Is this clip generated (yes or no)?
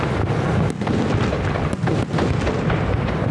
no